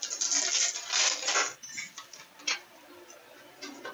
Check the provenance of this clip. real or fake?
real